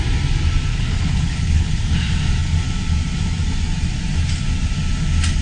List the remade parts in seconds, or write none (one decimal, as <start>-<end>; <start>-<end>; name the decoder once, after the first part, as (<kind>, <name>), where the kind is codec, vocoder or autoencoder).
0.7-1.8 (codec, HILCodec)